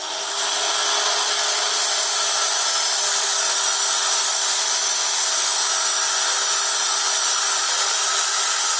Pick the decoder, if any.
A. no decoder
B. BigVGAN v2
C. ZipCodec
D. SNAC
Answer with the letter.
A